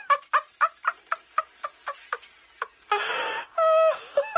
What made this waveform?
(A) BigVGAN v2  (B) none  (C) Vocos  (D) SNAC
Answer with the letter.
B